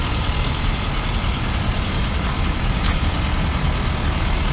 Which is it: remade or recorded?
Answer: recorded